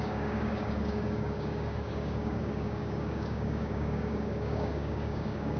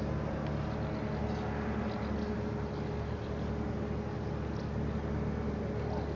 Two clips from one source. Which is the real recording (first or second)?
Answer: second